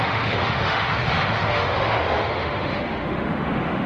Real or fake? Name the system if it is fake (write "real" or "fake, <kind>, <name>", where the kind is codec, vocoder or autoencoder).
fake, autoencoder, DAC-VAE